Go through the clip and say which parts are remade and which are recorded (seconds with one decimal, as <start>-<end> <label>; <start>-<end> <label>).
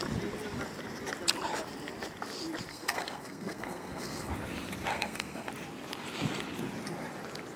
0.0-2.7 recorded; 2.7-4.3 remade; 4.3-4.9 recorded; 4.9-5.5 remade; 5.5-7.6 recorded